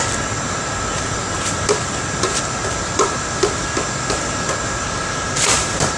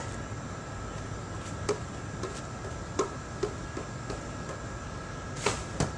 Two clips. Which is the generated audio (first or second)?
first